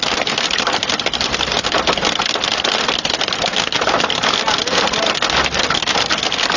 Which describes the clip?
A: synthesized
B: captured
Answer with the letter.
B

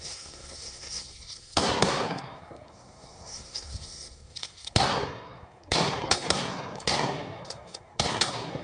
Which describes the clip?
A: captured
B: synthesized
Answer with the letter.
B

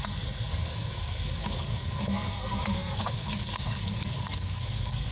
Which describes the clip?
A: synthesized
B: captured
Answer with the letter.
A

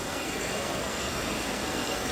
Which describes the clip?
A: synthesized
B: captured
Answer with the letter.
A